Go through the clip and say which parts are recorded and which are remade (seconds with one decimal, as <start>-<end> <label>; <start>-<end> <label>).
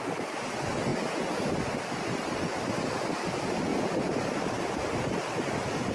0.0-5.9 recorded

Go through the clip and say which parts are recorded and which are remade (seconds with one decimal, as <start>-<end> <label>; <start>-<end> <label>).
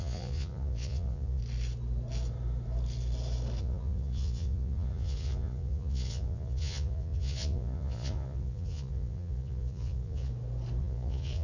0.0-1.4 remade; 1.4-3.6 recorded; 3.6-10.3 remade; 10.3-10.8 recorded; 10.8-11.4 remade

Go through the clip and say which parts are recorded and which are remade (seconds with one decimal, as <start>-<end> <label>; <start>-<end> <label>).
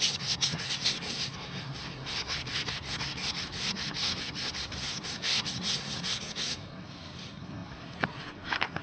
0.0-8.8 remade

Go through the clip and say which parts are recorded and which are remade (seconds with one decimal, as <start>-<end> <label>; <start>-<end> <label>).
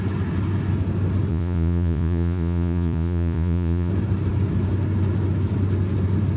0.0-1.3 recorded; 1.3-3.9 remade; 3.9-6.4 recorded